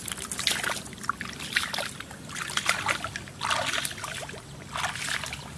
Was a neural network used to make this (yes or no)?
no